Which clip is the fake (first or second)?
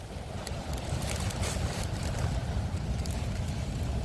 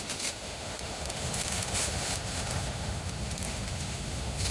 second